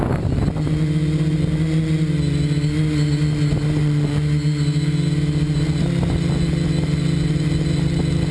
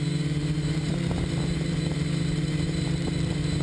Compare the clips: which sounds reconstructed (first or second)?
second